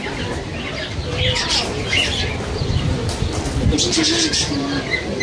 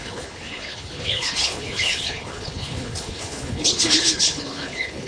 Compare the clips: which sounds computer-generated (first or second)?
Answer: second